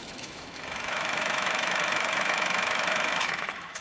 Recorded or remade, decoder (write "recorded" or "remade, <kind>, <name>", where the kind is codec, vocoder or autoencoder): remade, autoencoder, DAC-VAE